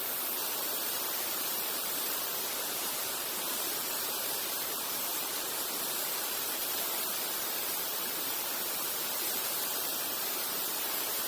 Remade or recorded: remade